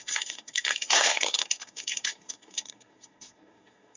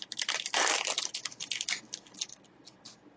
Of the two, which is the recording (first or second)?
second